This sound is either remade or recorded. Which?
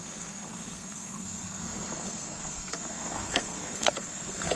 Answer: remade